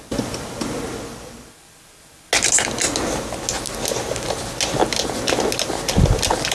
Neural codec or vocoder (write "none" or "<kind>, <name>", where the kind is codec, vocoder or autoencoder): none